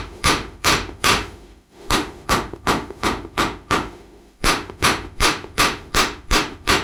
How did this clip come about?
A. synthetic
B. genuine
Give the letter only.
A